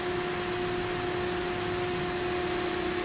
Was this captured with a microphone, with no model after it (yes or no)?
yes